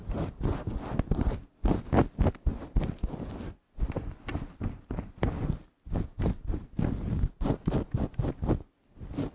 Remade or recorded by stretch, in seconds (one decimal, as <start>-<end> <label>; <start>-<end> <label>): 0.0-9.3 recorded